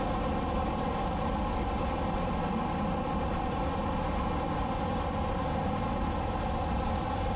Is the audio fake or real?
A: real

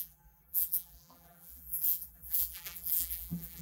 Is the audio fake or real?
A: fake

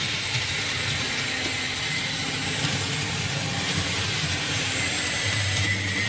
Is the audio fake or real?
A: fake